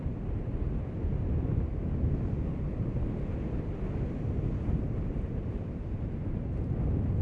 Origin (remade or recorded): recorded